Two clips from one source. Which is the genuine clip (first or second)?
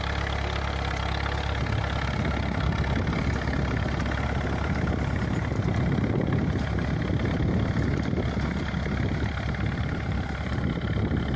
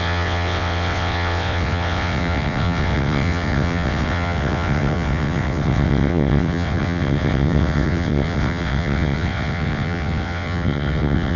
first